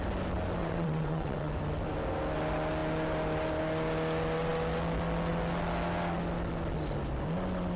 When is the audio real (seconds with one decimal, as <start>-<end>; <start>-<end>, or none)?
0.0-0.6; 1.5-7.8